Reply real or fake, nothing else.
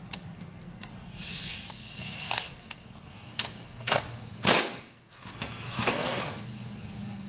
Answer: fake